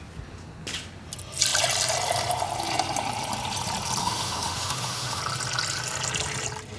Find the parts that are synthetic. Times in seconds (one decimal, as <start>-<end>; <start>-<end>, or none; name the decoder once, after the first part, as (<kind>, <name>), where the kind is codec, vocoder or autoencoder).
4.0-5.2 (autoencoder, DAC-VAE)